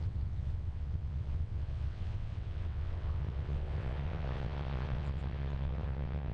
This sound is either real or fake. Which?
fake